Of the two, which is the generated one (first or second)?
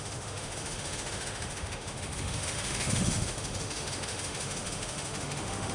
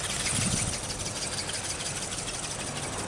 first